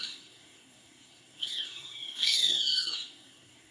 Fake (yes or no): yes